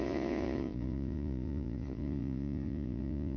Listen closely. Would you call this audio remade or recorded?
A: remade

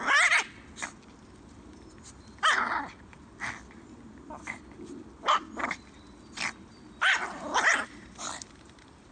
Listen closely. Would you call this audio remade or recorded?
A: recorded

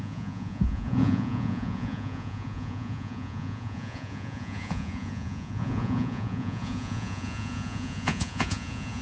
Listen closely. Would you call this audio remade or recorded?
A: remade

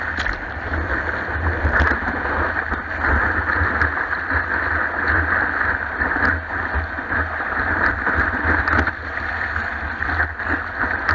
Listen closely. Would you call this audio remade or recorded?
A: recorded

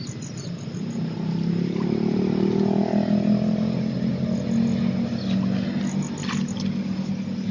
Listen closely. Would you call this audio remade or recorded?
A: recorded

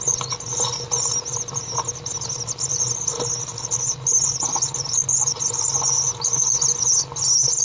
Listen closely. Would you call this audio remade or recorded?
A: recorded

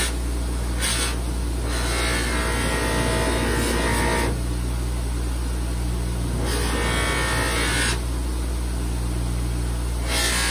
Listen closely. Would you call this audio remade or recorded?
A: recorded